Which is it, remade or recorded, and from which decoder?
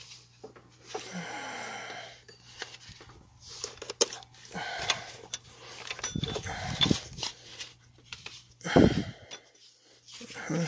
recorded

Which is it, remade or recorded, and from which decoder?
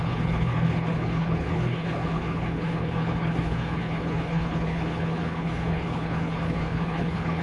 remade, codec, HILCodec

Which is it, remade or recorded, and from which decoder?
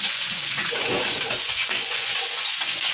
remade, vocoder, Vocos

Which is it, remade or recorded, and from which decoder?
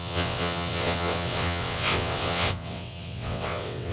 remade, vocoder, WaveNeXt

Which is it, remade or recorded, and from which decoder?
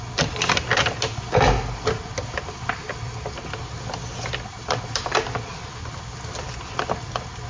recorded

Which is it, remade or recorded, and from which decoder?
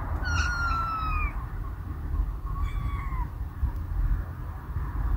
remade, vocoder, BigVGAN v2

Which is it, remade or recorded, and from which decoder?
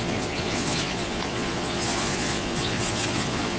remade, vocoder, Vocos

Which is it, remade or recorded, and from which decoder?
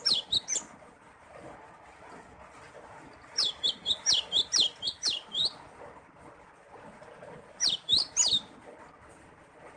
recorded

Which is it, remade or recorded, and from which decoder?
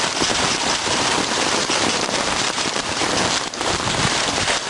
remade, vocoder, BigVGAN v2